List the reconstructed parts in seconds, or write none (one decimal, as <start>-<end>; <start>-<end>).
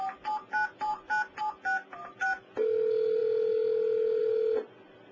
none